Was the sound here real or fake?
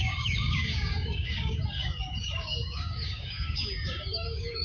fake